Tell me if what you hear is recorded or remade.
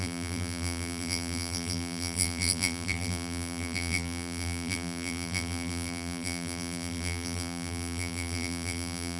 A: remade